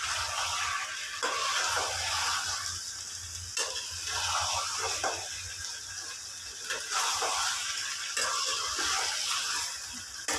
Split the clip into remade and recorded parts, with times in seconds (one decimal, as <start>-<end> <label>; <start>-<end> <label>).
0.0-10.4 recorded